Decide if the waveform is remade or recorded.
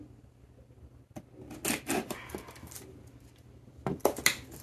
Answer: recorded